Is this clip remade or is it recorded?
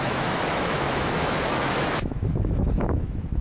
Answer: remade